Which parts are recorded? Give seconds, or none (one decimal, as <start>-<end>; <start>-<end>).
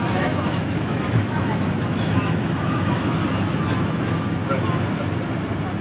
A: 3.2-3.8; 4.4-5.8